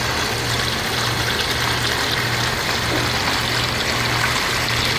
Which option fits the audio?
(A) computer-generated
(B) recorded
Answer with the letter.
B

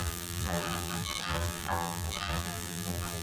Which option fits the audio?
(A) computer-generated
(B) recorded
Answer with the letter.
A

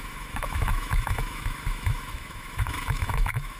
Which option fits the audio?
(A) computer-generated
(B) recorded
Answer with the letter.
A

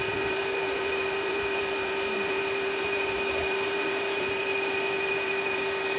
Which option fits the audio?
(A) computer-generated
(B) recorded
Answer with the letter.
A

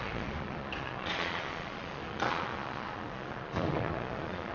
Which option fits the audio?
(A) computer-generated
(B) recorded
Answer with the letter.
A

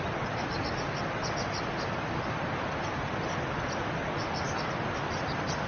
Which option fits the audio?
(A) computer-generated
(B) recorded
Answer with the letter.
B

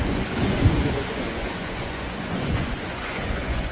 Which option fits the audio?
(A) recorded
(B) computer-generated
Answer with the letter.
B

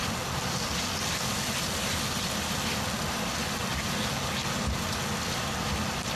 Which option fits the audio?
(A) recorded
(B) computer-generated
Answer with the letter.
A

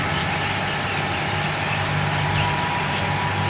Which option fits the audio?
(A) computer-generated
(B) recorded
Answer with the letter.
B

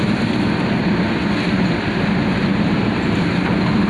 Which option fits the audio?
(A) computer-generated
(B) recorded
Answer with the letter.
B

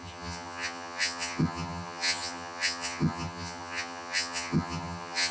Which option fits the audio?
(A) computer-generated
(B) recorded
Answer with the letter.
A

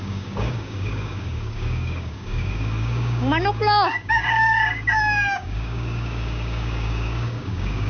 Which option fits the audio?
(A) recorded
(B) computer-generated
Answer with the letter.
B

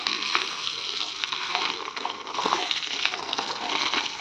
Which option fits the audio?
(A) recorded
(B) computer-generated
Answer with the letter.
B